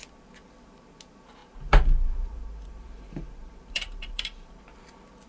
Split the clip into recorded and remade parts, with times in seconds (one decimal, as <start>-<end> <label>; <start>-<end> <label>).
0.0-1.4 recorded; 1.4-4.6 remade; 4.6-5.3 recorded